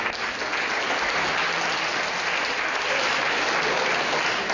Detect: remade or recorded recorded